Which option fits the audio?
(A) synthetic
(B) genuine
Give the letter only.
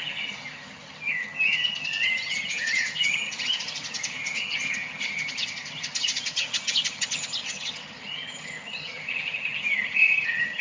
A